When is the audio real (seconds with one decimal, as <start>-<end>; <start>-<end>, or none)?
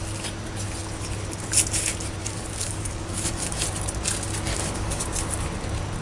0.0-2.2; 3.6-4.5; 5.0-6.0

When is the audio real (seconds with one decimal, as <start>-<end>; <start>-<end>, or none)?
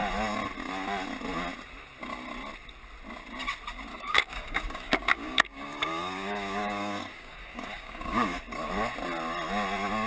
0.0-3.9; 8.4-10.1